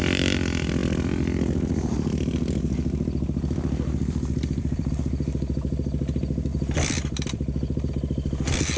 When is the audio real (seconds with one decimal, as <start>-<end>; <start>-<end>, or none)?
0.0-0.8; 4.9-6.5; 7.9-8.8

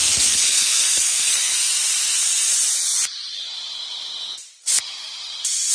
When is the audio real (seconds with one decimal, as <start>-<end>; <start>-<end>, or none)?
1.8-5.7

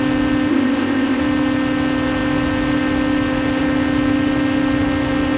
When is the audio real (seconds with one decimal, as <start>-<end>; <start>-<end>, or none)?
0.0-0.5; 1.2-5.4

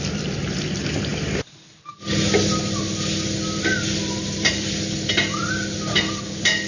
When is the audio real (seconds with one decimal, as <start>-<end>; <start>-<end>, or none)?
0.0-6.7